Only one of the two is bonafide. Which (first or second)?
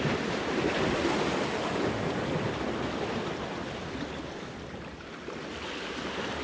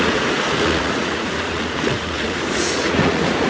first